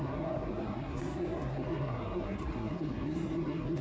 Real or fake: fake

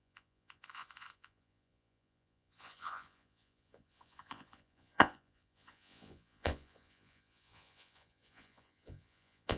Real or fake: fake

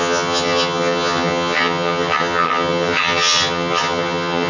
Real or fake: fake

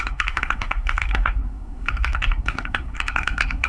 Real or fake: fake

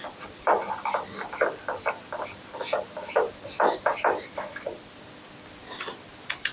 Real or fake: real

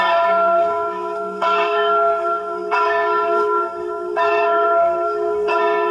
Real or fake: fake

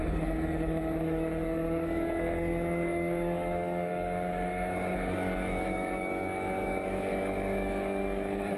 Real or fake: fake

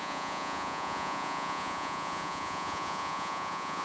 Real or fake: fake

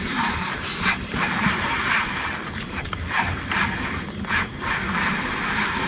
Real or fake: real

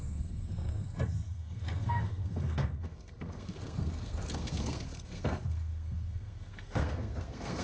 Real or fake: fake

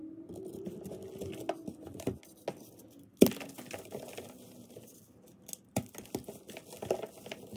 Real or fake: real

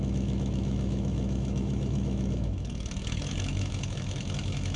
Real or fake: fake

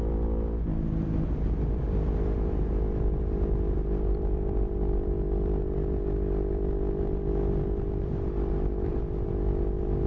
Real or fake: fake